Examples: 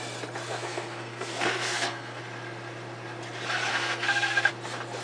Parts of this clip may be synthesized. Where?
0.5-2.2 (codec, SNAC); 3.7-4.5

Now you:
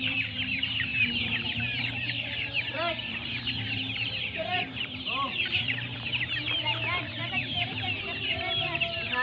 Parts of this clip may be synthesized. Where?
0.0-9.2 (vocoder, BigVGAN v2)

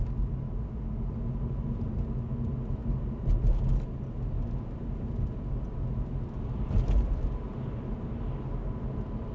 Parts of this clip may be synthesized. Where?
none

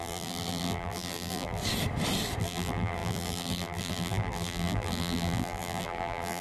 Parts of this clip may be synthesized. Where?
0.0-1.6 (vocoder, BigVGAN v2); 2.4-6.4

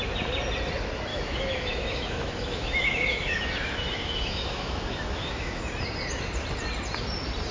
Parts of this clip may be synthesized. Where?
1.1-5.6 (autoencoder, DAC-VAE)

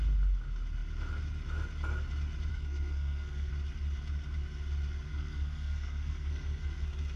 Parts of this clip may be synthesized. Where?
2.5-3.5 (codec, SNAC); 5.1-7.2

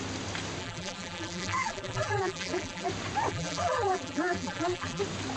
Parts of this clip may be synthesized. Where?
0.6-2.9 (vocoder, BigVGAN v2); 3.3-5.0